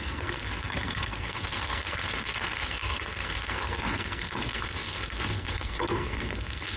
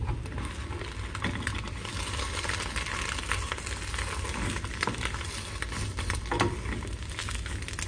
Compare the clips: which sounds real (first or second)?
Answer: second